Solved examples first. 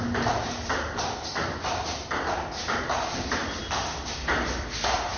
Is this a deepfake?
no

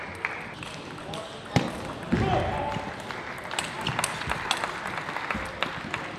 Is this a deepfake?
no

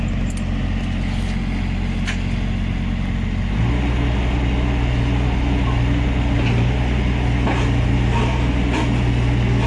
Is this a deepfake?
no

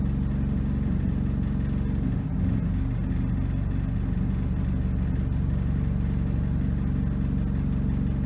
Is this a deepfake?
no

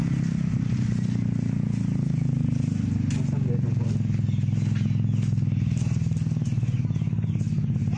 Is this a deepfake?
no